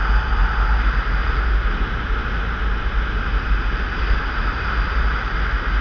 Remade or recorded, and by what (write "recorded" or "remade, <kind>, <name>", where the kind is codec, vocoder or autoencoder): recorded